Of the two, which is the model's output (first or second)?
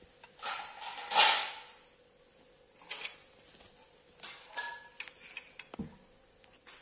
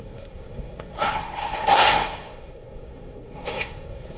second